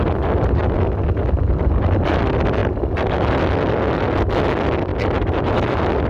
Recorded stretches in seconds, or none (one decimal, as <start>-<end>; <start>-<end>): 0.0-2.6; 3.4-4.9